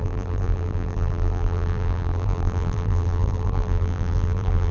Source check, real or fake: fake